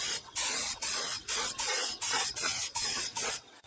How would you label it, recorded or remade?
remade